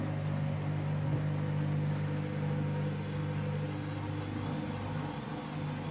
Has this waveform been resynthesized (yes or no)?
no